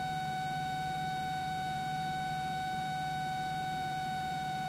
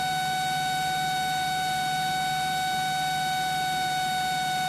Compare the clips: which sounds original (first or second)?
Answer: second